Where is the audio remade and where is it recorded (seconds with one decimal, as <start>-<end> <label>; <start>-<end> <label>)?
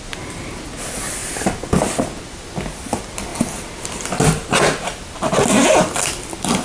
0.0-6.6 recorded